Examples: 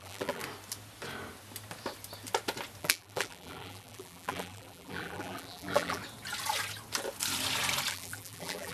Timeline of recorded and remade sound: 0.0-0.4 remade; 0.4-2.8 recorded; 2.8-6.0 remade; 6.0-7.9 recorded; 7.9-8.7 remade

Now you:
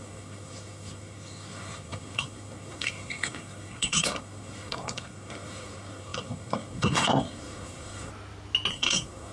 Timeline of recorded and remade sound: 0.0-8.1 remade; 8.1-8.7 recorded; 8.7-9.3 remade